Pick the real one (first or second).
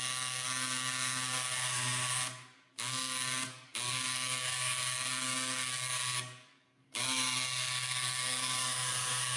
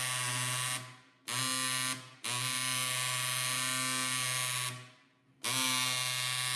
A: second